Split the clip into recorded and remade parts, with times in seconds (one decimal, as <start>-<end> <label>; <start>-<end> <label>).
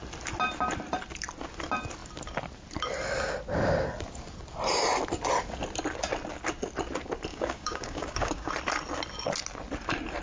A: 0.0-7.3 recorded; 7.3-8.5 remade; 8.5-10.2 recorded